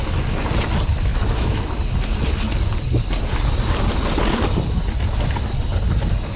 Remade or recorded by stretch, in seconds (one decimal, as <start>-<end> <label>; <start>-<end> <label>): 0.0-1.1 recorded; 1.1-1.6 remade; 1.6-6.4 recorded